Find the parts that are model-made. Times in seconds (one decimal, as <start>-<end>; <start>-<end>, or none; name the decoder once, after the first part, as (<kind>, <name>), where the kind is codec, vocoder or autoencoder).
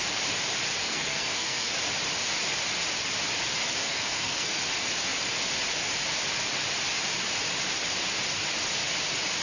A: 0.8-1.7 (codec, SNAC); 3.8-4.6